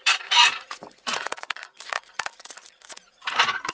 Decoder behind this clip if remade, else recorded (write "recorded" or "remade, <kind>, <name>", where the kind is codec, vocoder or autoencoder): remade, vocoder, Vocos